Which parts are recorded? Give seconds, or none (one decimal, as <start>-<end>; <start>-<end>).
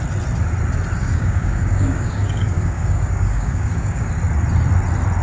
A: 0.0-1.0; 4.1-5.2